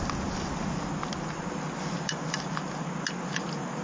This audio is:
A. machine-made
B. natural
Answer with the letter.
B